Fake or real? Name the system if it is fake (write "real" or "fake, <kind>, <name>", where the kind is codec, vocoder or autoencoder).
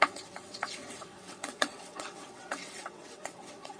fake, vocoder, WaveNeXt